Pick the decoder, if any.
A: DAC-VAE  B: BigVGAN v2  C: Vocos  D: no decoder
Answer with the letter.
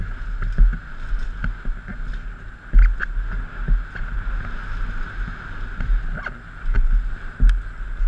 D